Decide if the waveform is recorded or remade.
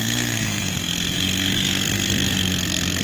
remade